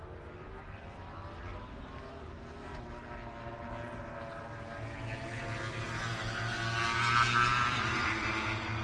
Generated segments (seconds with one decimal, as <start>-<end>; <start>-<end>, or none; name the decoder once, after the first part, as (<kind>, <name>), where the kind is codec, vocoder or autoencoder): 7.5-8.3 (vocoder, BigVGAN v2)